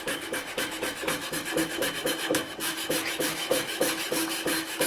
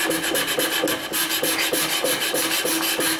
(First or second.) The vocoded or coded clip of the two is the first